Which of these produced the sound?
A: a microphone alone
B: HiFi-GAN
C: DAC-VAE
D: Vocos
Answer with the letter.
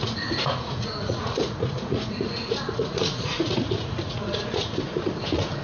D